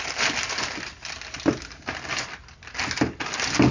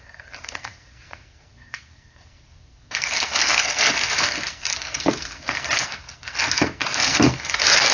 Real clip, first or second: first